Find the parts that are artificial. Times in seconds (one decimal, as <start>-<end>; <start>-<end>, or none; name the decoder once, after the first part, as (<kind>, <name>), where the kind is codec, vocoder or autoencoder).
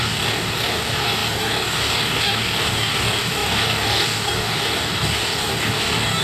0.0-6.2 (codec, DAC)